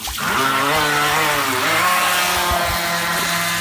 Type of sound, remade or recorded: recorded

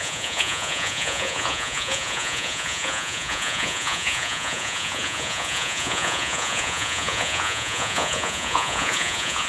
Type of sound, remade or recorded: remade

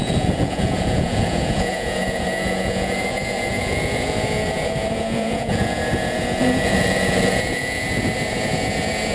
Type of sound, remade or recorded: remade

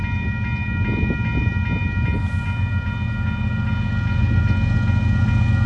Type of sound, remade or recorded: recorded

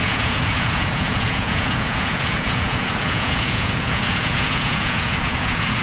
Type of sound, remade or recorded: remade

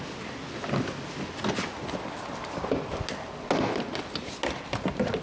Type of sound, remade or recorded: recorded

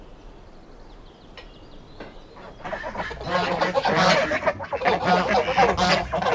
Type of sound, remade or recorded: recorded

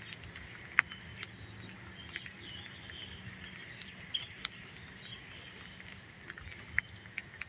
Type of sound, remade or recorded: recorded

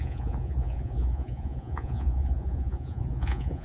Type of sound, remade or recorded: remade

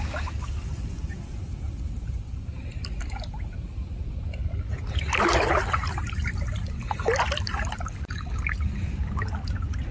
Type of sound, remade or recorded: recorded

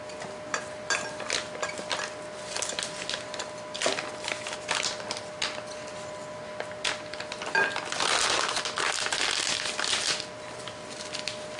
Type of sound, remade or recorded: recorded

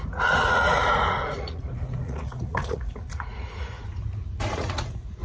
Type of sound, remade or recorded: remade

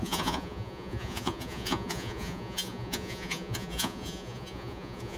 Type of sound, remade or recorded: remade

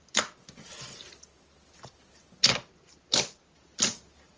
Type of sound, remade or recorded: recorded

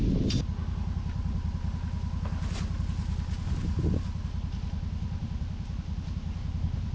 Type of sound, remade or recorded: recorded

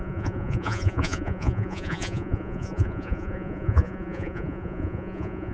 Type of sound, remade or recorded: remade